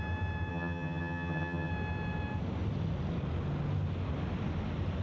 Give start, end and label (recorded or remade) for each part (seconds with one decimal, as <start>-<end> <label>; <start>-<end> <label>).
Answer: 0.0-0.5 recorded; 0.5-1.7 remade; 1.7-5.0 recorded